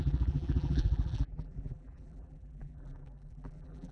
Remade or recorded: remade